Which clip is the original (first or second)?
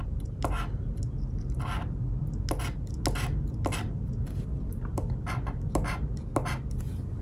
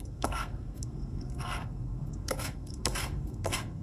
first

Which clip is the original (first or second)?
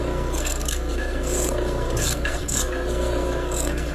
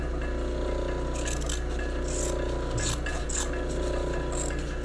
second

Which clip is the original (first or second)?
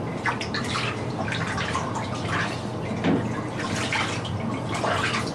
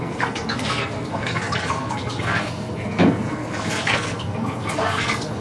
first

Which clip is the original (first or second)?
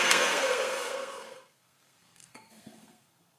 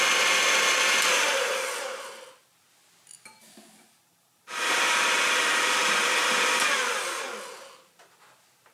second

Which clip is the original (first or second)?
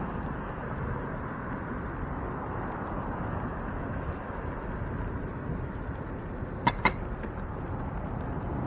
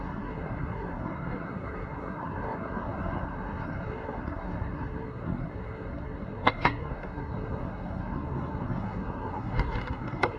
first